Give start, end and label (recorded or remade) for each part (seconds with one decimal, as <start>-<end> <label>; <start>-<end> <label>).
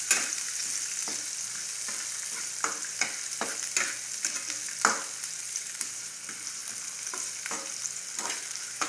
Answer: 0.0-0.6 remade; 0.6-5.6 recorded; 5.6-6.6 remade; 6.6-8.2 recorded; 8.2-8.9 remade